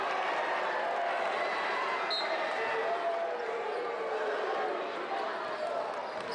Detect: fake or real real